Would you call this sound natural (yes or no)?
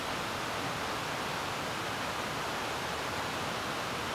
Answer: yes